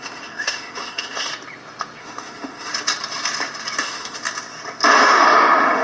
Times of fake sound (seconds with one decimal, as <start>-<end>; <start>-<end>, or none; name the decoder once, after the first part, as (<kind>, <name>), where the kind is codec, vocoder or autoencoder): 0.0-1.3 (autoencoder, DAC-VAE); 2.0-2.7; 3.8-4.2; 5.0-5.8